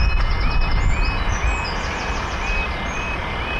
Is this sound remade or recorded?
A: recorded